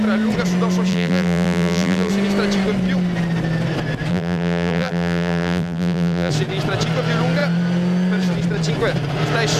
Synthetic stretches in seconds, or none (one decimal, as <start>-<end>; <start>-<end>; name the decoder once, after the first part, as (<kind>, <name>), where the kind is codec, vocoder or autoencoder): 0.9-2.1 (vocoder, BigVGAN v2); 4.1-6.3